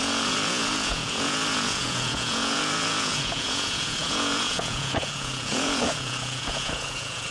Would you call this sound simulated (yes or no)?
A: yes